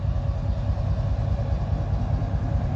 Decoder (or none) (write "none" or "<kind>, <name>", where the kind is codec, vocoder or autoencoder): none